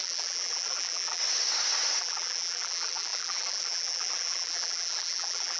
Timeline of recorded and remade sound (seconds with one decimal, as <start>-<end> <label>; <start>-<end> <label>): 0.0-1.2 remade; 1.2-2.0 recorded; 2.0-5.6 remade